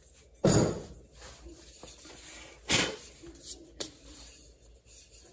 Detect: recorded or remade recorded